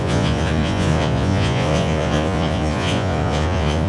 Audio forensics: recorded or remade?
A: remade